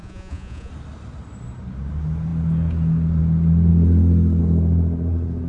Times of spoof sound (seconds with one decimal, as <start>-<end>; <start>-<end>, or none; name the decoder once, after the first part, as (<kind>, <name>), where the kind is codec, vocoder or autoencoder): 0.0-0.7 (vocoder, Vocos)